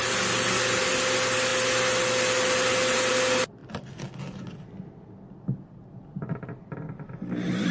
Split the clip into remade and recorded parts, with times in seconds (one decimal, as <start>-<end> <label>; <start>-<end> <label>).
0.0-7.7 recorded

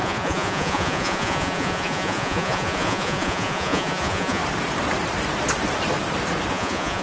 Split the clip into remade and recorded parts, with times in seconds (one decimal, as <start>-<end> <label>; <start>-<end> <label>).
0.0-4.4 remade; 4.4-6.5 recorded; 6.5-7.0 remade

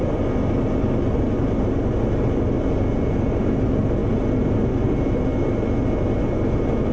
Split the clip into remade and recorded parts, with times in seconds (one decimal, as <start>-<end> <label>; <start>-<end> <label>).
0.0-6.9 recorded

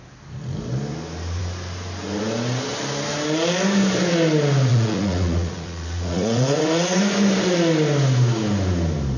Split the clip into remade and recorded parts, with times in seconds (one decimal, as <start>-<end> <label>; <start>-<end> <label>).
0.0-4.7 recorded; 4.7-7.0 remade; 7.0-9.2 recorded

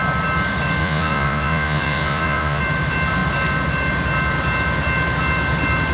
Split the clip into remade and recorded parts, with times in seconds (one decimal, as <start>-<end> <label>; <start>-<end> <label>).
0.0-0.8 recorded; 0.8-2.6 remade; 2.6-5.9 recorded

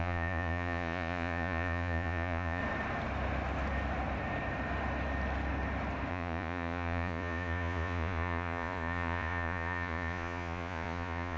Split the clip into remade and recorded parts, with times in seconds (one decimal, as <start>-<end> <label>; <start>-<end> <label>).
0.0-2.6 remade; 2.6-6.1 recorded; 6.1-11.4 remade

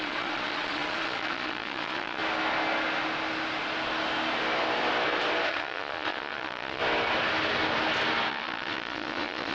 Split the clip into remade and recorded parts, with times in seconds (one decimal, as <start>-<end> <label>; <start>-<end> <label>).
0.0-2.2 remade; 2.2-5.5 recorded; 5.5-6.8 remade; 6.8-8.3 recorded; 8.3-9.5 remade

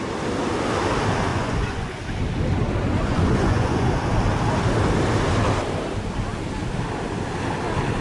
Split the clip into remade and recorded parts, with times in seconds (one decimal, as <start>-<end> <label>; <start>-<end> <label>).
0.0-1.3 recorded; 1.3-2.0 remade; 2.0-3.1 recorded; 3.1-3.9 remade; 3.9-8.0 recorded